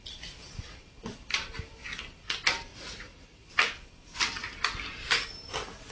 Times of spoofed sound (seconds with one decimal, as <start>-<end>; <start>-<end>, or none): 2.7-3.5